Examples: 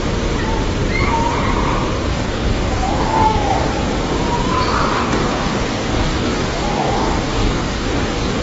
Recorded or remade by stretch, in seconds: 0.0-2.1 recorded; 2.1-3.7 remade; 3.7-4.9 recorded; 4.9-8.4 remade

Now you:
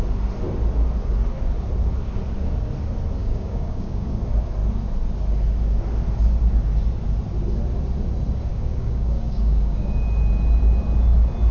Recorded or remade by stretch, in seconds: 0.0-3.2 recorded; 3.2-4.1 remade; 4.1-8.5 recorded; 8.5-9.9 remade; 9.9-11.5 recorded

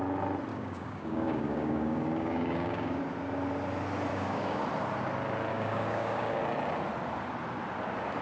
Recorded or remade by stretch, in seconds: 0.0-0.5 recorded; 0.5-3.0 remade; 3.0-4.1 recorded; 4.1-4.6 remade; 4.6-5.5 recorded; 5.5-6.4 remade; 6.4-8.2 recorded

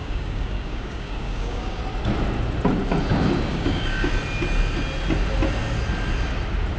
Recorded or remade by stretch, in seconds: 0.0-1.8 remade; 1.8-3.5 recorded; 3.5-4.1 remade; 4.1-6.8 recorded

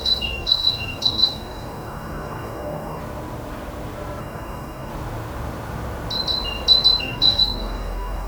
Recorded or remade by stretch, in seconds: 0.0-3.0 remade; 3.0-4.2 recorded; 4.2-4.9 remade; 4.9-7.0 recorded; 7.0-8.3 remade

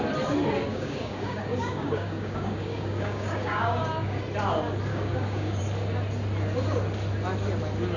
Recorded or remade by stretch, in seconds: 0.0-0.7 recorded; 0.7-4.2 remade; 4.2-4.9 recorded; 4.9-5.6 remade; 5.6-8.0 recorded